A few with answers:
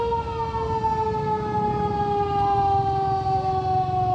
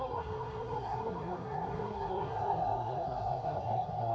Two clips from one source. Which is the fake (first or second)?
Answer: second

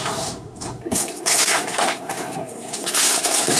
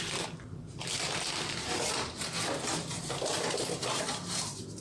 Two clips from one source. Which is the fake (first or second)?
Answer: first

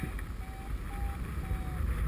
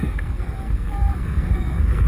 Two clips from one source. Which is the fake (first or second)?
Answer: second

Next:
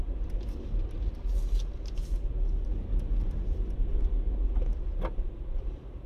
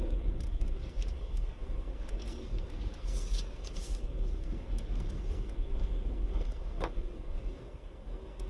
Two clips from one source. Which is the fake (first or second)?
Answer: second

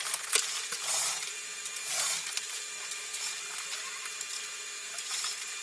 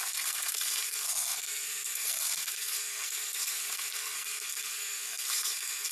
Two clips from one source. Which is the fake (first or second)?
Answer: second